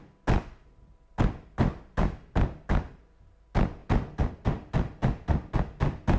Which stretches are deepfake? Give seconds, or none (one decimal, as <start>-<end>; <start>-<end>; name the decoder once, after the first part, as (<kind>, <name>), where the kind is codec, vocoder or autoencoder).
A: none

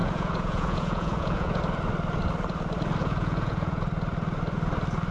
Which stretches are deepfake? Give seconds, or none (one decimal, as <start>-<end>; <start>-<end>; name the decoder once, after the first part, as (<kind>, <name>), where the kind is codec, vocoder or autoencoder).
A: 0.0-1.6 (vocoder, Vocos); 3.0-3.8

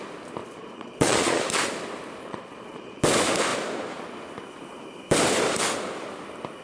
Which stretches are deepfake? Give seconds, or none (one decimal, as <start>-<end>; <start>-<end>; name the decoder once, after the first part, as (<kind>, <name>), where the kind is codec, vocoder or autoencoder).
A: 0.4-1.4 (vocoder, Vocos); 2.2-3.0